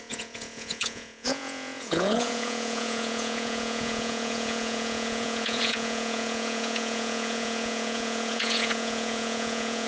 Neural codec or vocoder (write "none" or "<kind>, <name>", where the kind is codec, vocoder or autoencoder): vocoder, Vocos